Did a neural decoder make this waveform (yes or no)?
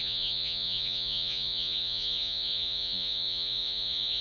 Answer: yes